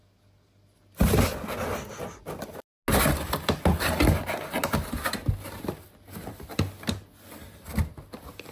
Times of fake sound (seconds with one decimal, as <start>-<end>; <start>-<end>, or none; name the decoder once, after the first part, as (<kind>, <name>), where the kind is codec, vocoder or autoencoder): none